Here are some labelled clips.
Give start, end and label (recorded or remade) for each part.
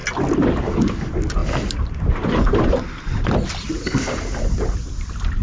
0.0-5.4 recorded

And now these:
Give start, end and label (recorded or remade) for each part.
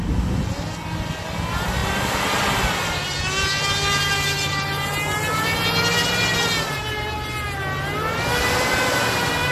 0.0-9.5 recorded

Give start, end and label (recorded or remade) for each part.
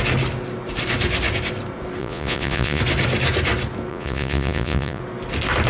0.0-2.0 recorded; 2.0-2.8 remade; 2.8-3.9 recorded; 3.9-5.0 remade; 5.0-5.7 recorded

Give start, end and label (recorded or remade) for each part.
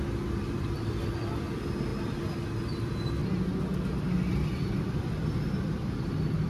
0.0-6.5 recorded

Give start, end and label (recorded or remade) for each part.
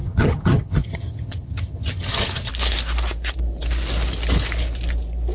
0.0-2.5 remade; 2.5-5.3 recorded